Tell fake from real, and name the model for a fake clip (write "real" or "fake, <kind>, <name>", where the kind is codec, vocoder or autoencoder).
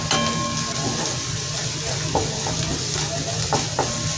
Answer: real